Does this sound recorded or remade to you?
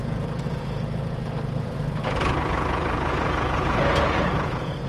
remade